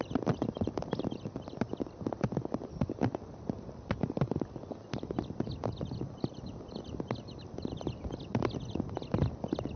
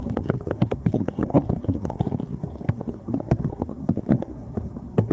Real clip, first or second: first